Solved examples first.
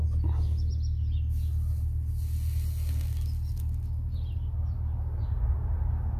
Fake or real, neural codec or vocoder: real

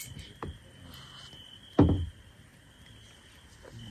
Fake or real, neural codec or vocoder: real